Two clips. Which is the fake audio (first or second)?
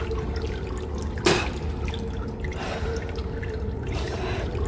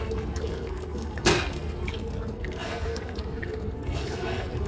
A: second